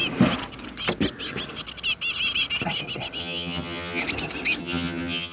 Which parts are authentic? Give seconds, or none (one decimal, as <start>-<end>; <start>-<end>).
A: 0.0-3.2; 4.0-4.6

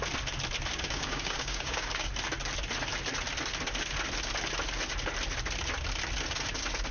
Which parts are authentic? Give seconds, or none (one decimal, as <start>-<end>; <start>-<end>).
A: 0.0-0.7; 2.1-6.9

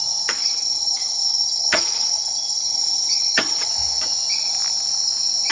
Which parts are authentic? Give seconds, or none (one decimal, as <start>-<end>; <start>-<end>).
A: 0.0-0.4; 3.7-5.5

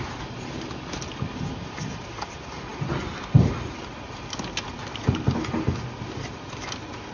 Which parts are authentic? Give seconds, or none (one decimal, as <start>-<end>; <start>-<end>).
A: 0.0-7.1

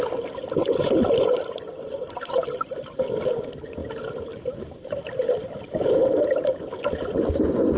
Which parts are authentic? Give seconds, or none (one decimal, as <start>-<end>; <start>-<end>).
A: 0.0-7.8